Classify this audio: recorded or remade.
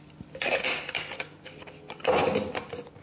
recorded